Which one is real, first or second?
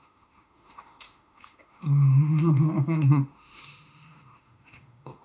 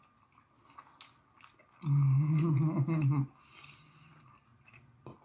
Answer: second